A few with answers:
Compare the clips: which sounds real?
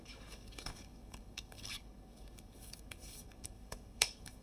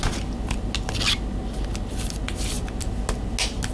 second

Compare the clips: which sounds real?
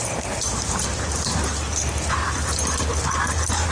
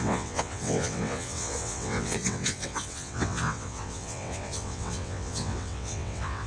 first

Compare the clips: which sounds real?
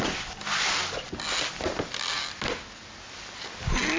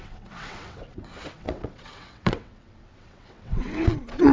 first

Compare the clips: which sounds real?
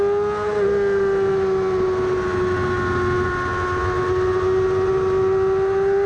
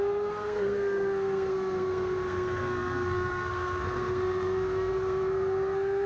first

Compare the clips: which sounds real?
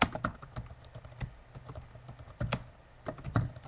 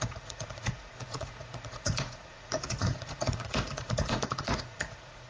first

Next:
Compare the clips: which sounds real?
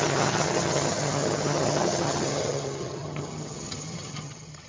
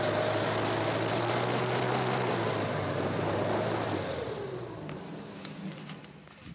second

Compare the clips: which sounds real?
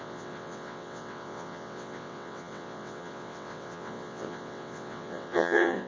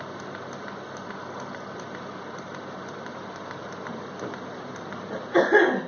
second